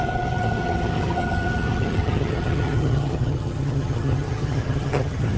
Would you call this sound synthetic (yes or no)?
yes